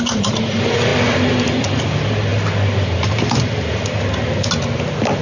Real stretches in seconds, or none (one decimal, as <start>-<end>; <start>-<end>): 0.0-5.2